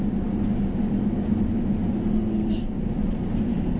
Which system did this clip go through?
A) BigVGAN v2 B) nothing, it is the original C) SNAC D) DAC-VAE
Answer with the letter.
B